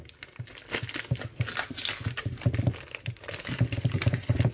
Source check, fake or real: real